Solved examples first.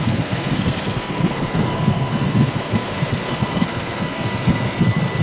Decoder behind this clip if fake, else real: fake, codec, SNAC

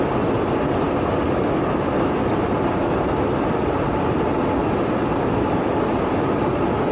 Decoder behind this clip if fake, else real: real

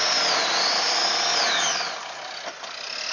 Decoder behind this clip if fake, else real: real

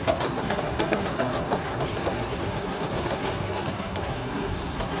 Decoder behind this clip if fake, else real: fake, codec, SNAC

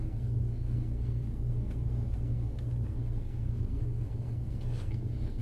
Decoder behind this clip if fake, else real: fake, codec, SNAC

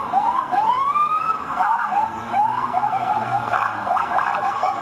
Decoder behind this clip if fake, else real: fake, codec, SNAC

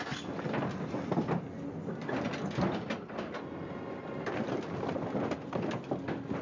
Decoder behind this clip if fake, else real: real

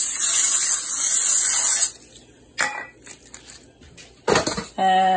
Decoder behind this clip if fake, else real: real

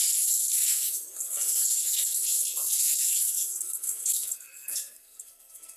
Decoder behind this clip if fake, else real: fake, codec, SNAC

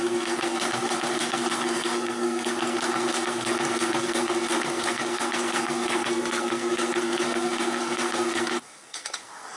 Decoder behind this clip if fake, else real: fake, codec, SNAC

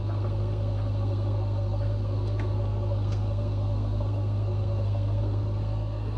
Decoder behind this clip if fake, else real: fake, codec, SNAC